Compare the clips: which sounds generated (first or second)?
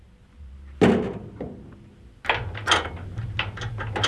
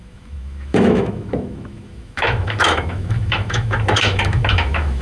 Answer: second